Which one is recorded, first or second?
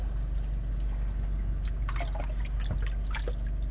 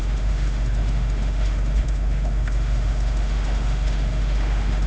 first